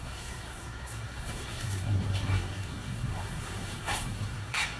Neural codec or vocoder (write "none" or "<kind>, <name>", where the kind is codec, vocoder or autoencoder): codec, SNAC